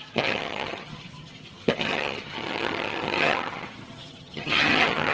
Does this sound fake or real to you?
fake